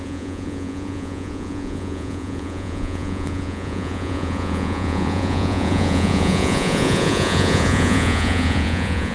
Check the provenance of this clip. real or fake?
fake